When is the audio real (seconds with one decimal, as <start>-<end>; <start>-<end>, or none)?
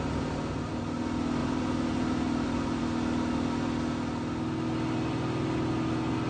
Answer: 0.0-1.4; 2.8-6.3